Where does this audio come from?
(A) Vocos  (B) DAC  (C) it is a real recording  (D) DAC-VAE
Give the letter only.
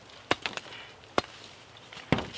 C